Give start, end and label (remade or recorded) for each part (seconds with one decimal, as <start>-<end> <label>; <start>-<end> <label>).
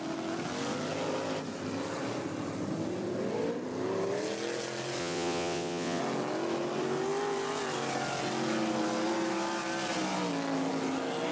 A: 0.0-5.0 recorded; 5.0-6.0 remade; 6.0-11.3 recorded